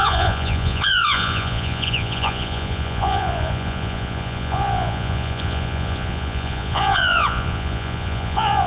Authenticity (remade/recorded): remade